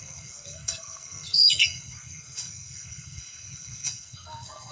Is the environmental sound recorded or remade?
remade